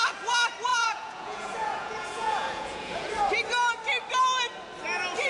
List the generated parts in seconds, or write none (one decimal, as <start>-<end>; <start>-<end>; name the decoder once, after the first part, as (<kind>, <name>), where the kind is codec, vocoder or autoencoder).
0.7-3.1 (vocoder, Vocos)